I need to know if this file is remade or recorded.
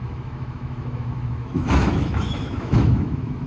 remade